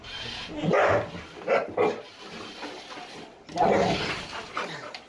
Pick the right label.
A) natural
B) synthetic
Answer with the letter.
A